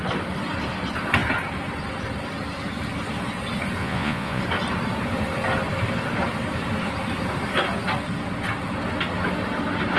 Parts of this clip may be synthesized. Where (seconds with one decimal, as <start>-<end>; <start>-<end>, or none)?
3.8-4.4